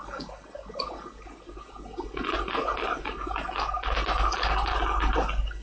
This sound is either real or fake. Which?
real